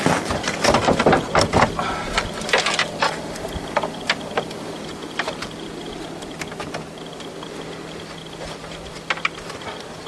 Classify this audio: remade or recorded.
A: recorded